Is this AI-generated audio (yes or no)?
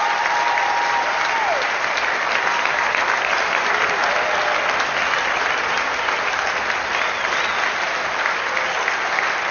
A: no